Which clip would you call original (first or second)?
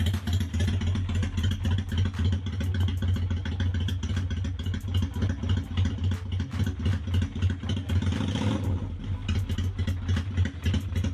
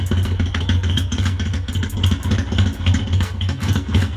first